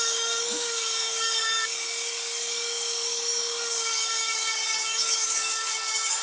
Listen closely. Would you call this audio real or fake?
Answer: fake